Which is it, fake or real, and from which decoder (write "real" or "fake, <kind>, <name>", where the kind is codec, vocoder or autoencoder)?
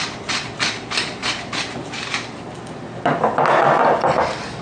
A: real